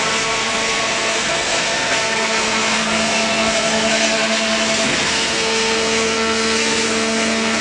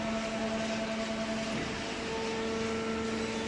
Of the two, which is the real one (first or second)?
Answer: second